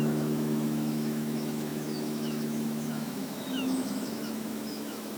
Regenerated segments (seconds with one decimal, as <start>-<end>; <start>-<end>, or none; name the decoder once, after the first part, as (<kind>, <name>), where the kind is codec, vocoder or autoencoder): 0.0-5.2 (autoencoder, DAC-VAE)